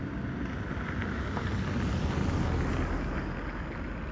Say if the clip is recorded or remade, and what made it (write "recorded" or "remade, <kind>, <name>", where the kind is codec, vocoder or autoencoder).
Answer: recorded